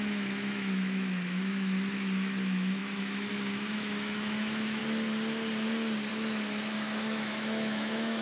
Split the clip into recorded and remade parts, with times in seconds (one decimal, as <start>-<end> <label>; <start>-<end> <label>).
0.0-4.8 remade; 4.8-6.1 recorded; 6.1-8.2 remade